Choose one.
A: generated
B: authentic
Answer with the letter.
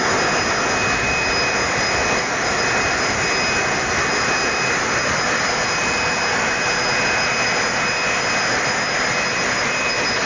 B